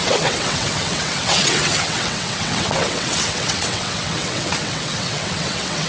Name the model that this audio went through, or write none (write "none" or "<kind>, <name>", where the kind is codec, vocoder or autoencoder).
vocoder, WaveNeXt